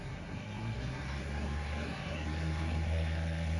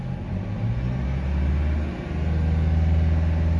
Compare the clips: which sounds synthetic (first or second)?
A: first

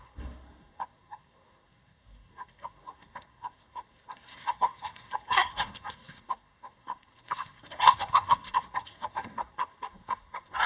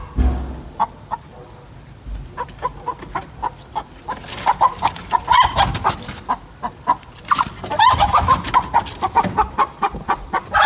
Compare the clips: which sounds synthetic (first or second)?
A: first